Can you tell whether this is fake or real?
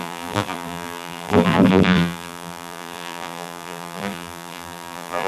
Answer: fake